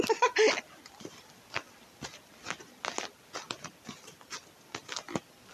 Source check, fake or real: real